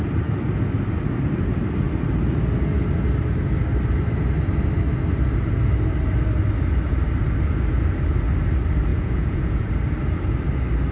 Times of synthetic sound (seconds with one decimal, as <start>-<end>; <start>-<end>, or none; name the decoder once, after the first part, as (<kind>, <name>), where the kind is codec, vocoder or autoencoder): 8.9-9.7 (vocoder, Vocos)